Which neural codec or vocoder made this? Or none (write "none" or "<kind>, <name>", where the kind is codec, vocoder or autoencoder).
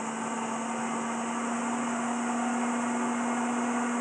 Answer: none